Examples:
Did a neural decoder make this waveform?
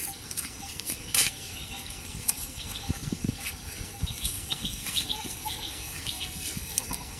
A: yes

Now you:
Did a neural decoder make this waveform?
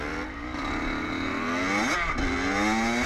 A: no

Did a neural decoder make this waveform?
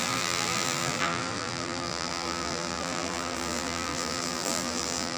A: yes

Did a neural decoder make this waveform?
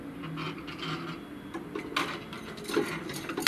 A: no